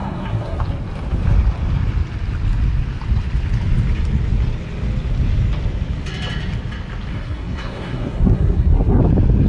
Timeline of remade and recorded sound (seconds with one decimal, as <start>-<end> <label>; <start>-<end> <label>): 0.0-0.6 remade; 0.6-7.1 recorded; 7.1-9.0 remade; 9.0-9.5 recorded